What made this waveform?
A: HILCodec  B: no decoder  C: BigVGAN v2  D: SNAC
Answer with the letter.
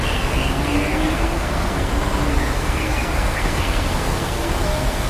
D